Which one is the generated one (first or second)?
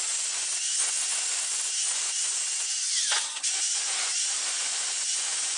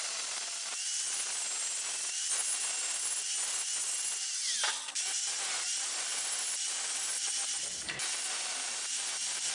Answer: first